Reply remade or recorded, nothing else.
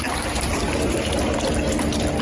recorded